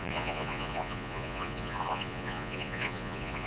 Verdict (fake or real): fake